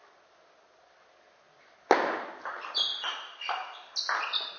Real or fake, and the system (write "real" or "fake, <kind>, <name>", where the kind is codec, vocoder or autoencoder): real